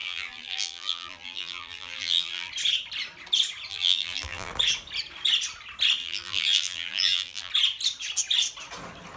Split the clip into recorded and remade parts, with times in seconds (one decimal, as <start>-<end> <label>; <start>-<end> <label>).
0.0-2.5 remade; 2.5-3.7 recorded; 3.7-4.5 remade; 4.5-6.0 recorded; 6.0-7.5 remade; 7.5-9.2 recorded